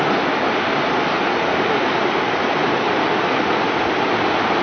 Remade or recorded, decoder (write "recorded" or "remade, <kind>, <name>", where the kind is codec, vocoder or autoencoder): recorded